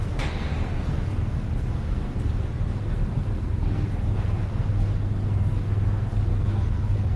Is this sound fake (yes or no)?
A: yes